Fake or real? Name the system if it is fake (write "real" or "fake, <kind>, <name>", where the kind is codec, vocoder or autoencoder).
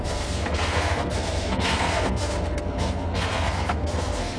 fake, codec, SNAC